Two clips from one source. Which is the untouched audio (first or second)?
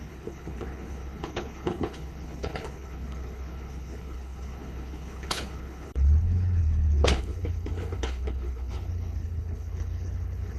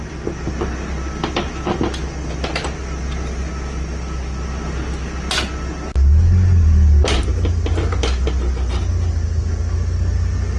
second